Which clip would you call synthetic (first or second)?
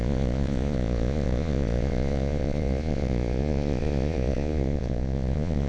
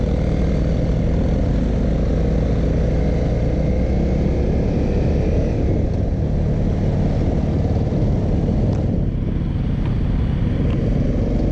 first